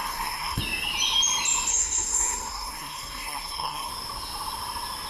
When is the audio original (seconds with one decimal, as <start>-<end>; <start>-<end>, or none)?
0.6-1.7; 3.9-5.1